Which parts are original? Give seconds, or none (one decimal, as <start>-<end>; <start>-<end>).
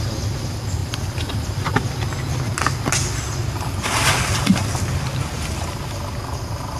0.0-6.8